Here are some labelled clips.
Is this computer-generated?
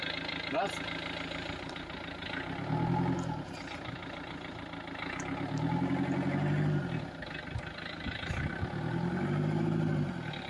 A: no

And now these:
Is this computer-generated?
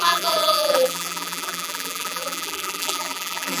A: yes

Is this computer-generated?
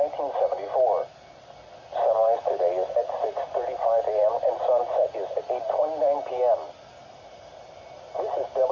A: no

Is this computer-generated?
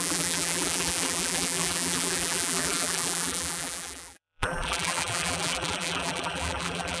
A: yes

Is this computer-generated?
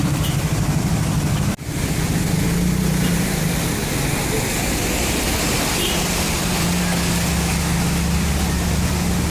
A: no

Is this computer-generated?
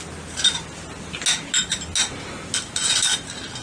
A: no